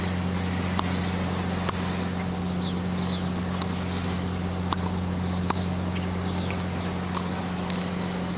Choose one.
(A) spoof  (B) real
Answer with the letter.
B